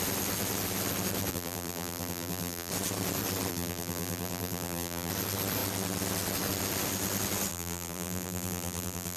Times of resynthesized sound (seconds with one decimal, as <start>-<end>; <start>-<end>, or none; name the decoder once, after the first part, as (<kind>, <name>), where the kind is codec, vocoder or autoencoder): 1.3-2.7 (vocoder, BigVGAN v2); 3.5-5.1; 7.5-9.2